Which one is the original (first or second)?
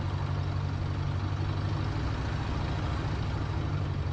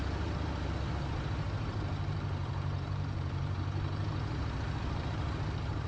first